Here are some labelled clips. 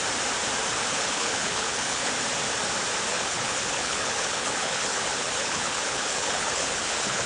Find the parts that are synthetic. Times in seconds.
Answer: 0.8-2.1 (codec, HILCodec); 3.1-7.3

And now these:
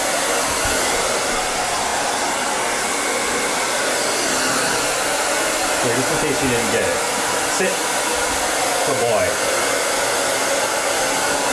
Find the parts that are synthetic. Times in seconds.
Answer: none